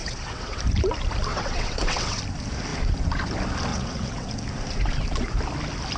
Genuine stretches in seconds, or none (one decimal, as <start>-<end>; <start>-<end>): 0.6-1.3; 2.2-3.7; 4.3-6.0